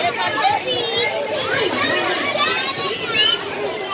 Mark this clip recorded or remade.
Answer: recorded